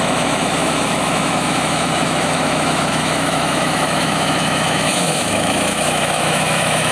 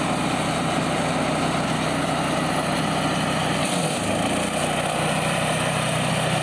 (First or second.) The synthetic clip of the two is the first